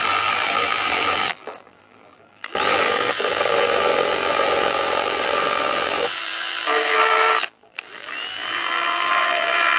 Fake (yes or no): yes